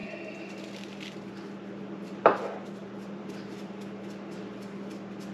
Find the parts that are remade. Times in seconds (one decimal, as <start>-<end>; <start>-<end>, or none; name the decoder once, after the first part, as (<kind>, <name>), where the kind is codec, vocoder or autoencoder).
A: 0.0-1.3 (vocoder, BigVGAN v2); 2.8-3.6